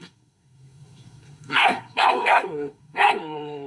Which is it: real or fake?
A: fake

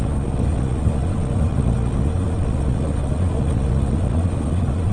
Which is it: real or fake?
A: fake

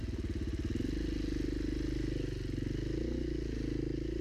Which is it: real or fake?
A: real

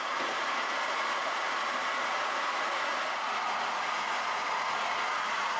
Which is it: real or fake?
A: fake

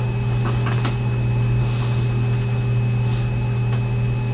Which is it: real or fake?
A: real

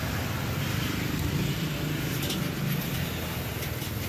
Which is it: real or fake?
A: real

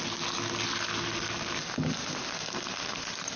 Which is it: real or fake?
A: real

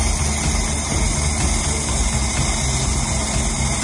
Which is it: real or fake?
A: real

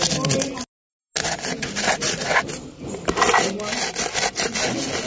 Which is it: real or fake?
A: real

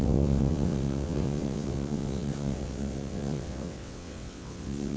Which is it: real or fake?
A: fake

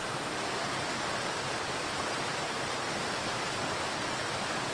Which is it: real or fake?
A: real